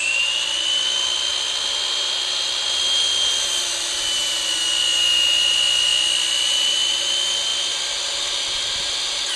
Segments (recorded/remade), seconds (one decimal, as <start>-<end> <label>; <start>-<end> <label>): 0.0-1.3 recorded; 1.3-4.8 remade; 4.8-5.9 recorded; 5.9-6.9 remade; 6.9-9.4 recorded

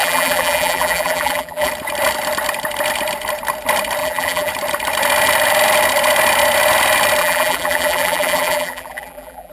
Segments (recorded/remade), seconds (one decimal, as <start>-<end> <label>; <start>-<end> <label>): 0.0-1.7 remade; 1.7-4.0 recorded; 4.0-4.5 remade; 4.5-7.2 recorded; 7.2-9.5 remade

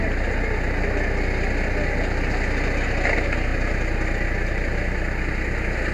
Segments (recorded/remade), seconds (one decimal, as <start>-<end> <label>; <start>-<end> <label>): 0.0-5.9 recorded

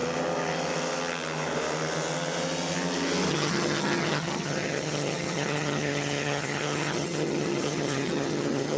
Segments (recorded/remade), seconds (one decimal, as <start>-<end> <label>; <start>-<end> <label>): 0.0-3.3 recorded; 3.3-8.8 remade

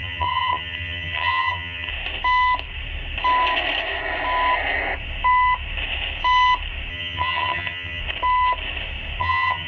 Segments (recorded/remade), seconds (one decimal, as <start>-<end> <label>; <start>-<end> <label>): 0.0-1.9 remade; 1.9-6.9 recorded; 6.9-8.0 remade; 8.0-9.2 recorded; 9.2-9.7 remade